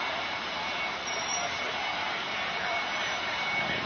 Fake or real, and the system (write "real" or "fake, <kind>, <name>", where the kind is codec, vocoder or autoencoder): fake, vocoder, BigVGAN v2